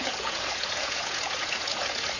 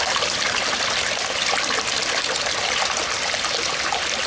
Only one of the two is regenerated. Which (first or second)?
first